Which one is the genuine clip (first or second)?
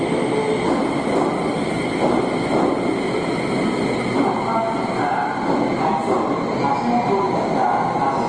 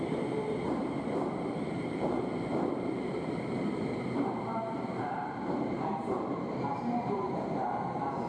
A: first